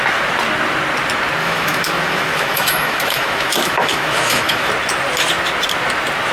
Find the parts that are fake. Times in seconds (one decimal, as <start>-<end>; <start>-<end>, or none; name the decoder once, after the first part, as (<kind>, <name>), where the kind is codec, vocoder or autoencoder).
1.4-4.7 (autoencoder, DAC-VAE)